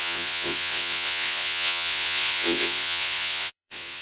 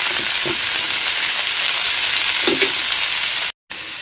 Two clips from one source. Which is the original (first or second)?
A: second